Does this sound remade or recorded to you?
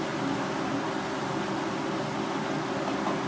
recorded